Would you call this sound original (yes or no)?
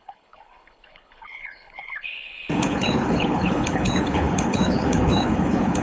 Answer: no